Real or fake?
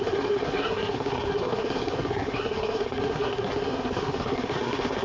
fake